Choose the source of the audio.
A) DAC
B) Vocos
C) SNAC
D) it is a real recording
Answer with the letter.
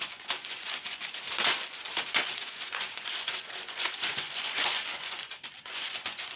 B